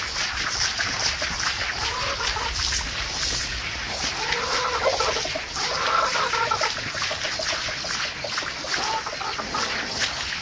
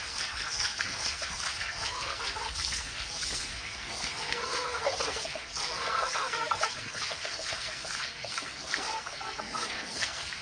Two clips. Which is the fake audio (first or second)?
second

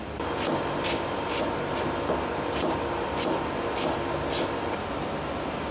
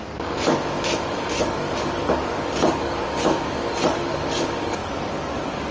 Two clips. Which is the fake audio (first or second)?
second